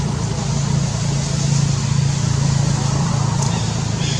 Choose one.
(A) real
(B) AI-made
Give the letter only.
A